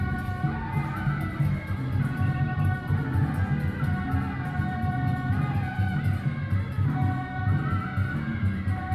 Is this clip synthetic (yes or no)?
no